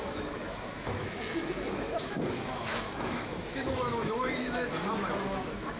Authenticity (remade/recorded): remade